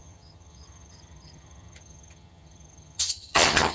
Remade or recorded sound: remade